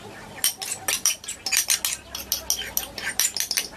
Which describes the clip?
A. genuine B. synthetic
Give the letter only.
A